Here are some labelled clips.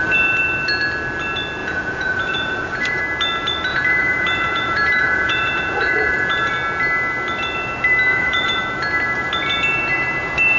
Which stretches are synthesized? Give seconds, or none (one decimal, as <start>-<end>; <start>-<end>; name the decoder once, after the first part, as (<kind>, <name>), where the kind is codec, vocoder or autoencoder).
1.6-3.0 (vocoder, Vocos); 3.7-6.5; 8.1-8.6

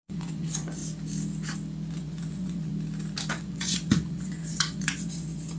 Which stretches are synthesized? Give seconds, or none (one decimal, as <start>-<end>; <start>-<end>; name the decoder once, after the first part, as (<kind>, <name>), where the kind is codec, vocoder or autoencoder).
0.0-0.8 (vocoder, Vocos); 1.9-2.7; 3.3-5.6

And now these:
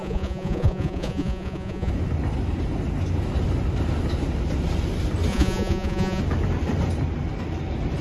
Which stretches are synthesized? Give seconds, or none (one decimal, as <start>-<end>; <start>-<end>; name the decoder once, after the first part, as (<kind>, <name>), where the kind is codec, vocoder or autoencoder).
0.0-1.9 (vocoder, Vocos); 5.3-6.2

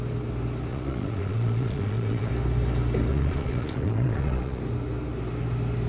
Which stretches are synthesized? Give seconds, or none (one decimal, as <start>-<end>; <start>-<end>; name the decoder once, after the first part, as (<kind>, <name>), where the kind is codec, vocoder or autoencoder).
0.7-2.3 (vocoder, Vocos); 3.1-4.6